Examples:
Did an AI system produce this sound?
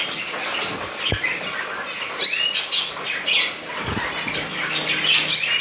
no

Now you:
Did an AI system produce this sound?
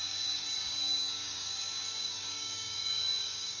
yes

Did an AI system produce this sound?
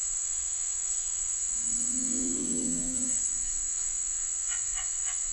yes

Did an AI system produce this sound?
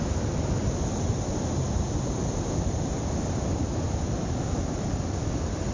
no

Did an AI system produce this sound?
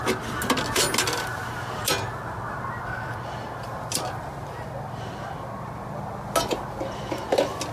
no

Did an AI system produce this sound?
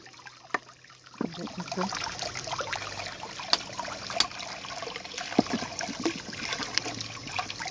no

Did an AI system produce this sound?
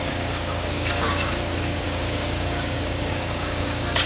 yes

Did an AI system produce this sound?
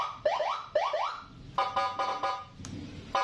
no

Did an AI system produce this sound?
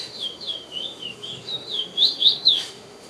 yes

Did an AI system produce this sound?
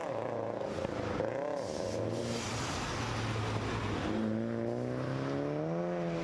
no